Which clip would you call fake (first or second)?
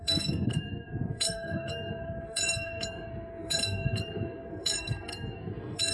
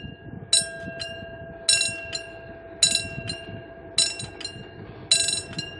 first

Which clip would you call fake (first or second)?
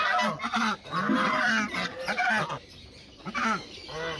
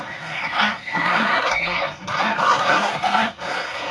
second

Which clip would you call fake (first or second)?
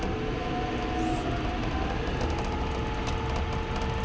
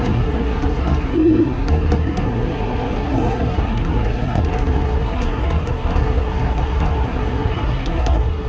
second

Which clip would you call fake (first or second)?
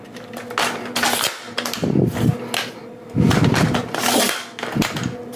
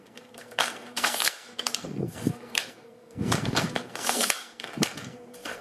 second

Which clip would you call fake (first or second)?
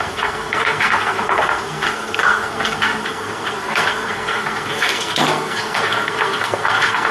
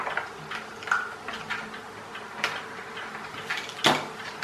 first